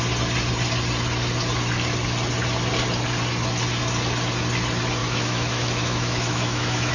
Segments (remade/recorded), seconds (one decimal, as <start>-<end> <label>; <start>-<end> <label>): 0.0-5.0 recorded; 5.0-6.9 remade

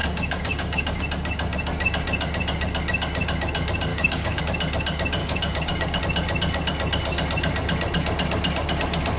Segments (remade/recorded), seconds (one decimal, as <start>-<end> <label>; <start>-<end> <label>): 0.0-1.0 remade; 1.0-3.9 recorded; 3.9-4.4 remade; 4.4-5.2 recorded; 5.2-6.0 remade; 6.0-9.2 recorded

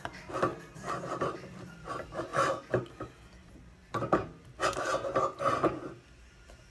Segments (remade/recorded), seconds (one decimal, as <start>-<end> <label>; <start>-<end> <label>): 0.0-0.5 remade; 0.5-1.2 recorded; 1.2-2.3 remade; 2.3-3.3 recorded; 3.3-4.9 remade; 4.9-6.3 recorded; 6.3-6.7 remade

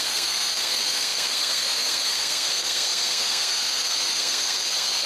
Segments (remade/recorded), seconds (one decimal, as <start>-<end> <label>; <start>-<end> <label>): 0.0-5.1 remade

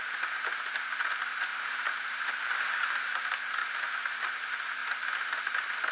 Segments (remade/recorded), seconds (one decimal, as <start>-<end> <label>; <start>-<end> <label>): 0.0-1.5 recorded; 1.5-2.5 remade; 2.5-3.6 recorded; 3.6-4.2 remade; 4.2-5.9 recorded

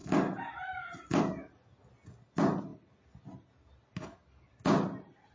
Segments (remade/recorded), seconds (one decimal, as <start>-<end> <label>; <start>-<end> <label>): 0.0-5.3 recorded